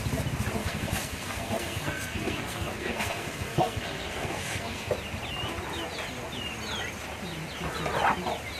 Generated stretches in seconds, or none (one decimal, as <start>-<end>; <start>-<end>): 0.6-4.9